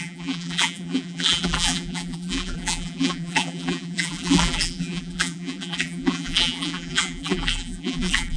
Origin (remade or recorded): remade